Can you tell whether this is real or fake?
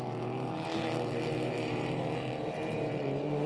fake